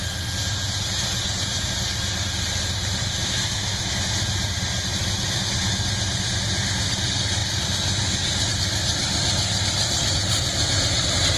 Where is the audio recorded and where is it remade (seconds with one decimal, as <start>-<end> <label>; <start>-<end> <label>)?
0.0-3.0 recorded; 3.0-3.9 remade; 3.9-11.4 recorded